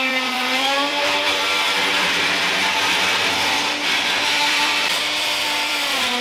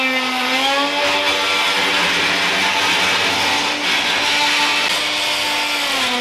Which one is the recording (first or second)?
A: second